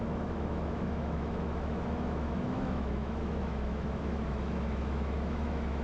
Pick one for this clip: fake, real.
fake